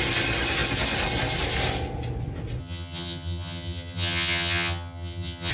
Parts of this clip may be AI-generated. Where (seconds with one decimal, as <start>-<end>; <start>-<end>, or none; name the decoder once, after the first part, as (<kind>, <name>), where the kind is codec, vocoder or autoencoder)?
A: 2.6-5.5 (vocoder, HiFi-GAN)